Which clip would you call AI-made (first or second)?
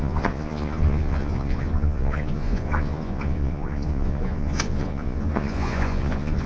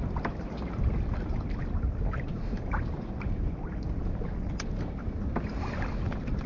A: first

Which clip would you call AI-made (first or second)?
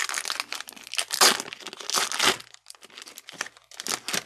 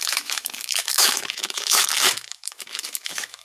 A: second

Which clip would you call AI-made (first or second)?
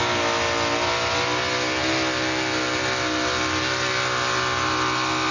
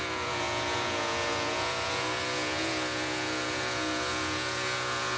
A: second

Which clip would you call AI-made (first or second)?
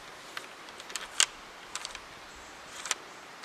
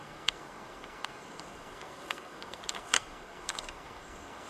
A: second